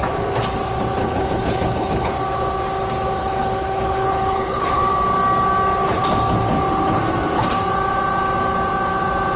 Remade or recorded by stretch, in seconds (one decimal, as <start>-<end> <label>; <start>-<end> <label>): 0.0-1.0 recorded; 1.0-2.1 remade; 2.1-3.2 recorded; 3.2-4.8 remade; 4.8-9.4 recorded

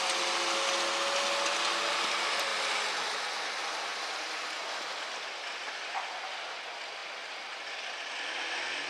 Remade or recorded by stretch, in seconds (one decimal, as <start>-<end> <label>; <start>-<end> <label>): 0.0-8.9 recorded

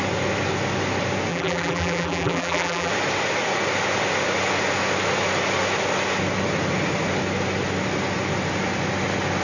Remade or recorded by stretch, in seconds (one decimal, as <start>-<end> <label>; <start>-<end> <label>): 0.0-1.3 recorded; 1.3-2.9 remade; 2.9-9.4 recorded

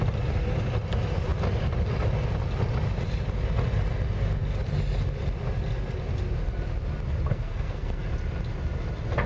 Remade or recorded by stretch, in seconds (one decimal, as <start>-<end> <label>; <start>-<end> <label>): 0.0-7.3 recorded; 7.3-8.0 remade; 8.0-9.3 recorded

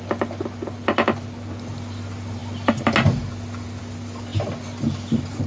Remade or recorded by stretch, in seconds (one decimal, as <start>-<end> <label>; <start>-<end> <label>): 0.0-5.5 recorded

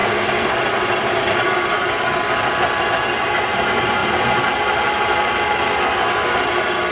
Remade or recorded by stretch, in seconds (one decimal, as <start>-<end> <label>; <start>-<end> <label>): 0.0-0.5 remade; 0.5-6.9 recorded

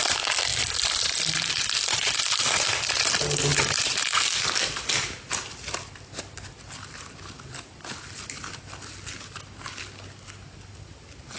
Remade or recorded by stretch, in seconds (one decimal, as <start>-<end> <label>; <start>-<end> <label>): 0.0-0.5 recorded; 0.5-2.4 remade; 2.4-11.4 recorded

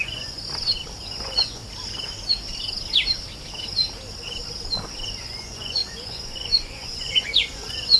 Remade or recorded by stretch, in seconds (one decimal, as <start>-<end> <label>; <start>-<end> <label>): 0.0-0.4 remade; 0.4-1.0 recorded; 1.0-1.6 remade; 1.6-5.2 recorded; 5.2-8.0 remade